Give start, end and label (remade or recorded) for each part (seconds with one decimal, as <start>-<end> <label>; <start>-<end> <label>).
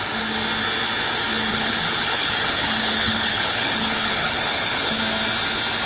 0.0-1.5 recorded; 1.5-5.0 remade; 5.0-5.9 recorded